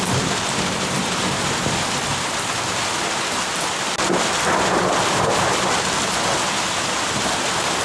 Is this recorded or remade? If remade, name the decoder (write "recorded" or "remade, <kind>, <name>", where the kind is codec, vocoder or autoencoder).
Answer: remade, vocoder, BigVGAN v2